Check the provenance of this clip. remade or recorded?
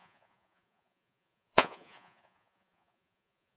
remade